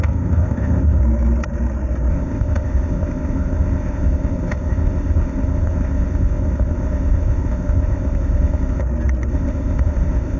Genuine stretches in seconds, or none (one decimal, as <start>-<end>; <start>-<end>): 1.0-2.1; 8.8-9.3